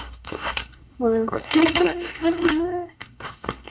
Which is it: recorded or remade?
remade